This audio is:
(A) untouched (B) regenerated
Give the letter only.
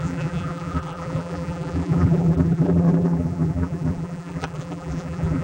B